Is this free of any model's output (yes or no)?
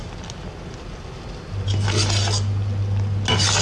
yes